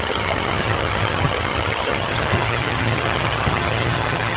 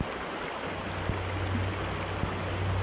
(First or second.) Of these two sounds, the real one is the second